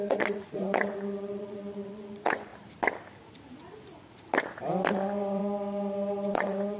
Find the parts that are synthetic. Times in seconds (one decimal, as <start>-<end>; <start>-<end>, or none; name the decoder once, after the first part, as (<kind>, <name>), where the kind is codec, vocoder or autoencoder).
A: 0.0-2.5 (vocoder, Vocos); 4.9-5.4; 6.3-6.8